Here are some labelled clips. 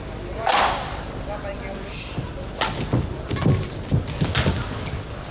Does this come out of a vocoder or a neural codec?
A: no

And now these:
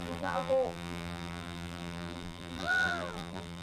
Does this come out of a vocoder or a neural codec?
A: yes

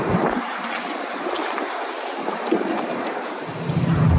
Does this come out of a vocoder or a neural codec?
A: yes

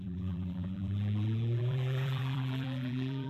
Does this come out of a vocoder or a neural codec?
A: yes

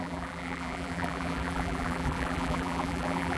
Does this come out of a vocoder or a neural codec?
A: yes